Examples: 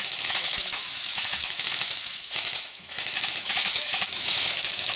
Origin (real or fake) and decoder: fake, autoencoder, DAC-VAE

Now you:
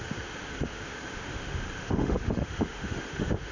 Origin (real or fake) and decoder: fake, autoencoder, DAC-VAE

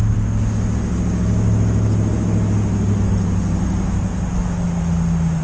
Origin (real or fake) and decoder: real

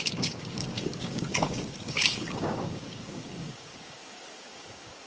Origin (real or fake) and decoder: fake, codec, DAC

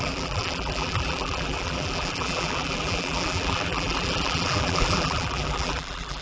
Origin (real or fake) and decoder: fake, vocoder, BigVGAN v2